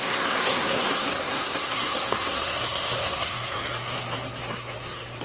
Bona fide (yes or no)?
no